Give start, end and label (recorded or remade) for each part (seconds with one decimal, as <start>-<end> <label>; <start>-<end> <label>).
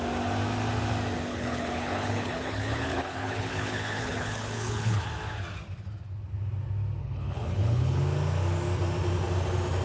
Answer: 0.0-1.3 recorded; 1.3-5.1 remade; 5.1-7.0 recorded; 7.0-8.0 remade; 8.0-9.8 recorded